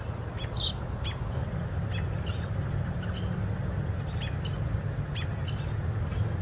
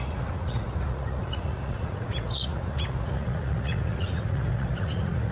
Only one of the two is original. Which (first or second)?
first